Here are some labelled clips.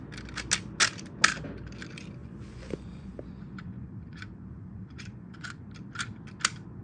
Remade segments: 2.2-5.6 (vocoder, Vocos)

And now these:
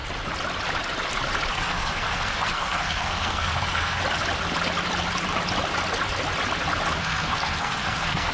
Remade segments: 1.5-4.0 (codec, SNAC); 7.0-8.3

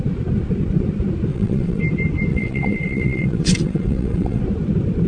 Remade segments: 1.3-1.8 (vocoder, WaveNeXt); 2.3-4.4

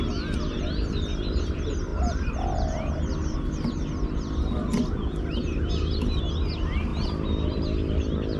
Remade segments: none

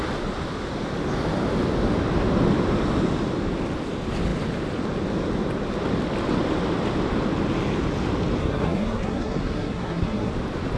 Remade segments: 8.4-10.3 (codec, SNAC)

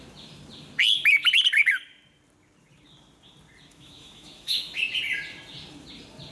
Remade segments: 3.7-4.8 (autoencoder, DAC-VAE)

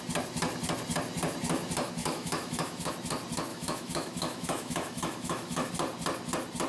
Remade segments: 2.0-2.9 (autoencoder, DAC-VAE); 3.5-5.7

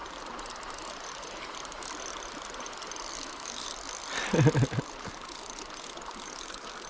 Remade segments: 3.2-3.7 (autoencoder, DAC-VAE)